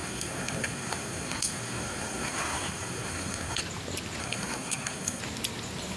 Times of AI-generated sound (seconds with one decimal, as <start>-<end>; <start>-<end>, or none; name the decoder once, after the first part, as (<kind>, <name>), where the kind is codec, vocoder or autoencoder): 0.0-3.6 (codec, SNAC); 4.2-5.2